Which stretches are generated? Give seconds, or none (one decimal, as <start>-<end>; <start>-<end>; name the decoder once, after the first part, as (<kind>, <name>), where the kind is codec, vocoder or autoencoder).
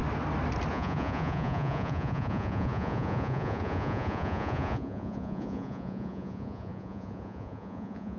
0.7-8.2 (vocoder, Vocos)